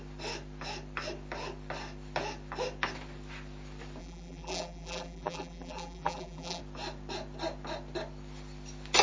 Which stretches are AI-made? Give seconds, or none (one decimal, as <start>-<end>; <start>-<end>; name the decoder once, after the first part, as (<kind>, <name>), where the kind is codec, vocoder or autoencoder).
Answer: 4.0-6.6 (vocoder, BigVGAN v2)